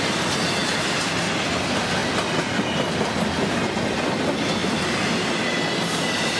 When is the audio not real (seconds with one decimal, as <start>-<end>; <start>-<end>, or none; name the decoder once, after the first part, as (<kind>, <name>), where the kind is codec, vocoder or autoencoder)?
0.6-1.2 (vocoder, BigVGAN v2); 4.6-5.3